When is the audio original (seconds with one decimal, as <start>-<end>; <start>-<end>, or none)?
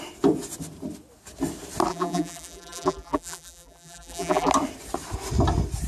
0.0-1.9; 4.5-5.9